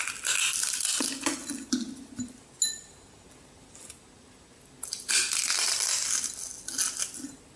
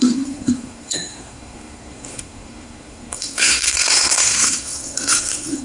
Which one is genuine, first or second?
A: first